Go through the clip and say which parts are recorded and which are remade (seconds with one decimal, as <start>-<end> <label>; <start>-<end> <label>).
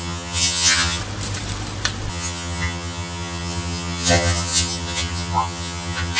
0.0-1.0 remade; 1.0-2.1 recorded; 2.1-6.2 remade